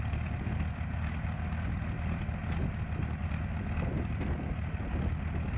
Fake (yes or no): no